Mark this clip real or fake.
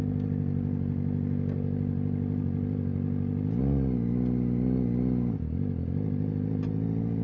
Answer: real